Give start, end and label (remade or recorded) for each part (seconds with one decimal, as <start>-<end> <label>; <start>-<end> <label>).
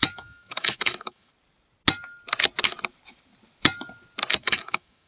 0.0-1.3 remade; 1.3-4.4 recorded; 4.4-5.1 remade